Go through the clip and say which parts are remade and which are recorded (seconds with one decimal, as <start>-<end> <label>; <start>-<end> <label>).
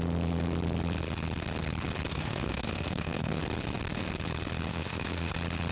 0.0-2.1 recorded; 2.1-3.4 remade; 3.4-4.7 recorded; 4.7-5.3 remade; 5.3-5.7 recorded